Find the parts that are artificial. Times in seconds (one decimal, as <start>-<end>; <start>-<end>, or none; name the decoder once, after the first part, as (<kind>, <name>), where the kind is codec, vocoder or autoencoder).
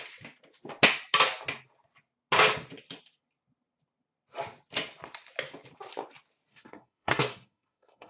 6.5-8.1 (codec, SNAC)